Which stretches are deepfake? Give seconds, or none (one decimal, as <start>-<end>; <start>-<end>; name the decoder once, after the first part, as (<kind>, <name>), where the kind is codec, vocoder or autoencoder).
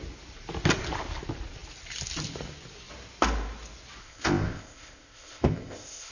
4.0-6.1 (codec, ZipCodec)